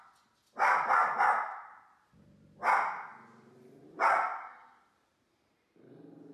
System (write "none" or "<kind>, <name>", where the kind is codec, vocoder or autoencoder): none